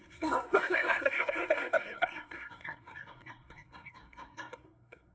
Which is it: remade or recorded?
remade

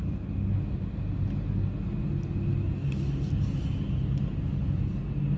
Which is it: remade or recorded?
recorded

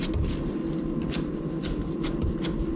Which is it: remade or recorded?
recorded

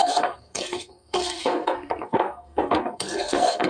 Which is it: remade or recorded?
remade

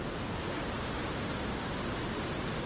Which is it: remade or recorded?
recorded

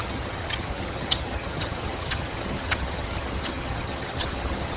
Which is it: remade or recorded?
remade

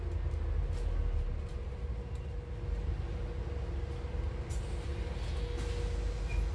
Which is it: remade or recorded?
recorded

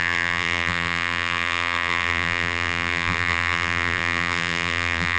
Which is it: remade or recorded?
remade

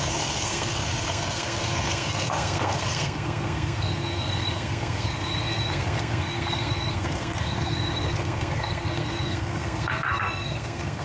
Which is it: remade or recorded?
remade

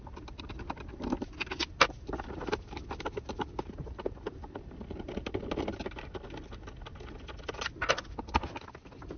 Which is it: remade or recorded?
recorded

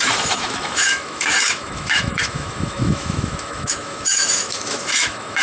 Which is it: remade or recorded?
remade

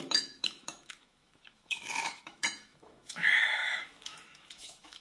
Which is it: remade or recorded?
remade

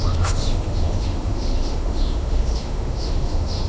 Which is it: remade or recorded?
remade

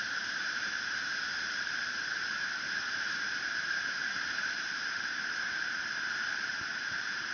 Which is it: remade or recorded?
remade